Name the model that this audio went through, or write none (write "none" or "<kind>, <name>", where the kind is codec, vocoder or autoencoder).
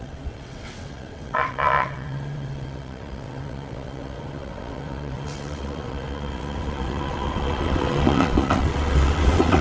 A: vocoder, WaveNeXt